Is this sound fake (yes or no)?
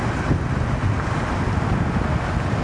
no